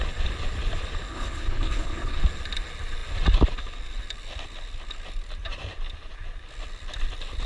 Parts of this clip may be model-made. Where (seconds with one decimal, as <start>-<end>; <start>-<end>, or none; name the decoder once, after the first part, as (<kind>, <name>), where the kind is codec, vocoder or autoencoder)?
1.1-2.2 (codec, HILCodec)